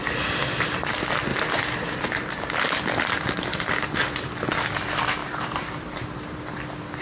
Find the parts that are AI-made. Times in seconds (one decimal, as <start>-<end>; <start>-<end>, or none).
1.3-2.6; 3.5-4.3; 5.2-6.5